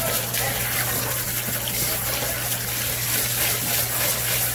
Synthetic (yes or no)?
no